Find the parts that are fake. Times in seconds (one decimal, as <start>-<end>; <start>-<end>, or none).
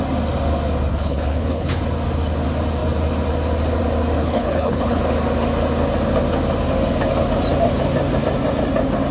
0.9-1.8; 4.2-5.0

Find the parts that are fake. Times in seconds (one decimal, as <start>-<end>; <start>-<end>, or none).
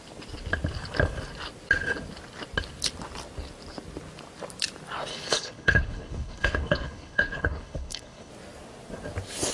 5.1-8.3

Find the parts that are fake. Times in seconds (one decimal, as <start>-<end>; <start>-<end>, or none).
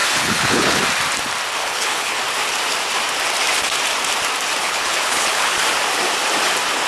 0.0-0.8; 1.6-2.2; 4.6-5.6